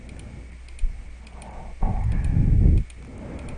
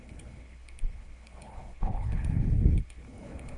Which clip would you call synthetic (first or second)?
second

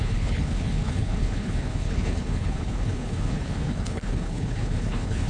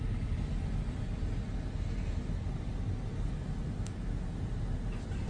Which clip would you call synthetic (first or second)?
first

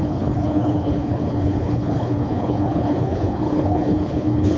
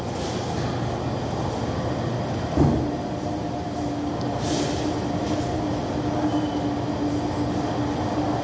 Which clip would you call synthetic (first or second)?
first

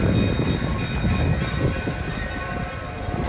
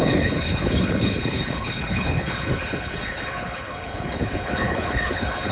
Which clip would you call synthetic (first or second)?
second